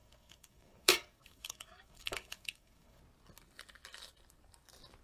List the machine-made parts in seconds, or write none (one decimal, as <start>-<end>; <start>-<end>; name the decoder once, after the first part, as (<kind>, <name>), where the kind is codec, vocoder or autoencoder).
0.0-3.0 (codec, DAC)